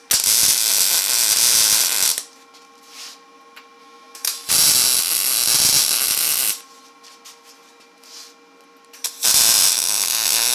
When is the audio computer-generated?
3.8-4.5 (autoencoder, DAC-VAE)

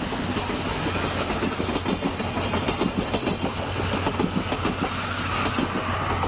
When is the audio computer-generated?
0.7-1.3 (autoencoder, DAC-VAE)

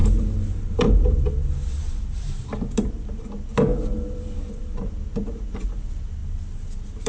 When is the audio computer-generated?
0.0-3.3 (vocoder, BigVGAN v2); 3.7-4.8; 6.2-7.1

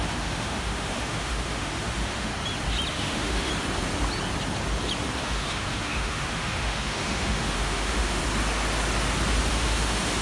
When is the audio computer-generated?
0.0-2.3 (autoencoder, DAC-VAE); 2.9-3.5; 5.2-8.2; 9.5-10.2

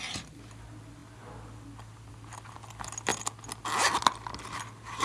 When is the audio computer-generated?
none